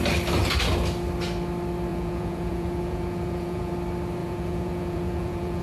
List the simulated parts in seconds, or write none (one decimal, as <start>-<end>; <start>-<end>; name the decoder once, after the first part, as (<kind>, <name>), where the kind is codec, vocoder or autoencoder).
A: 1.9-3.7 (vocoder, Vocos); 4.2-5.6